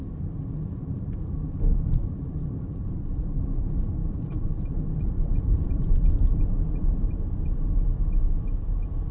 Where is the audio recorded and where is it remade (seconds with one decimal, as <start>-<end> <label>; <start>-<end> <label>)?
0.0-2.0 recorded; 2.0-3.4 remade; 3.4-4.0 recorded; 4.0-7.8 remade; 7.8-9.1 recorded